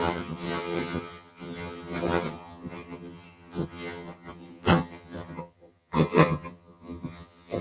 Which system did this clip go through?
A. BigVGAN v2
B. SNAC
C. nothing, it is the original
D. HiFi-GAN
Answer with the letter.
D